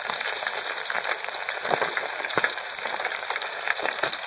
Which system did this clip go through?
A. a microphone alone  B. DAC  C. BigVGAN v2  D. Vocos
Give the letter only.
C